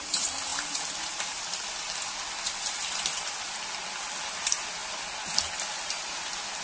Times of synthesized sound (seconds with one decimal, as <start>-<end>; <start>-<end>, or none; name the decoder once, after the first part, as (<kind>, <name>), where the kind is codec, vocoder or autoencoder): none